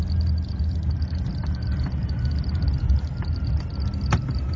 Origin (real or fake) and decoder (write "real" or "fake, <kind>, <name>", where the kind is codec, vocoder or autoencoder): real